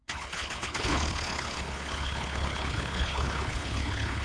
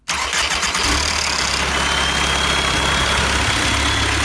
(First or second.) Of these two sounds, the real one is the second